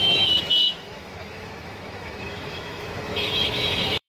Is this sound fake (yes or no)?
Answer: yes